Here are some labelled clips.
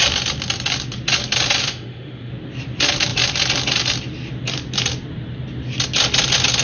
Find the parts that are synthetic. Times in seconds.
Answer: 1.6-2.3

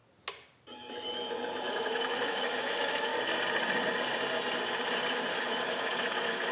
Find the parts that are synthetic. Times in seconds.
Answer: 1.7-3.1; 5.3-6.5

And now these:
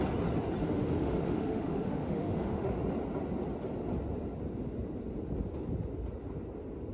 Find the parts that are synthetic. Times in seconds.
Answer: 0.6-2.8

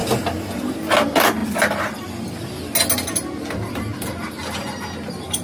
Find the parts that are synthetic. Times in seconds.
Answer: none